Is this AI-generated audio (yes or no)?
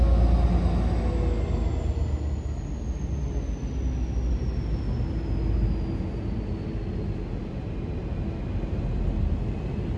no